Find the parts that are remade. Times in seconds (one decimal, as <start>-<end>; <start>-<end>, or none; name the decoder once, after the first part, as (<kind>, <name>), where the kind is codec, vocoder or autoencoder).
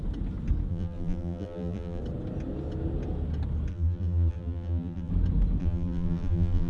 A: 0.7-2.0 (vocoder, BigVGAN v2); 3.7-5.1; 5.6-6.7